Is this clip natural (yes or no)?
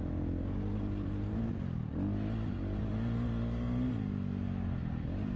yes